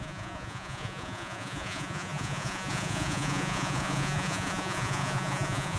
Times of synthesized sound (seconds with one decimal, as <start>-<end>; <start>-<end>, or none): 0.0-5.8